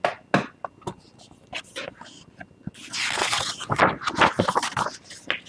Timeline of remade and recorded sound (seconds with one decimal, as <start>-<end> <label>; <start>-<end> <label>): 0.0-3.2 recorded; 3.2-3.8 remade; 3.8-5.5 recorded